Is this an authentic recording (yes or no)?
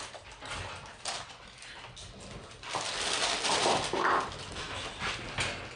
yes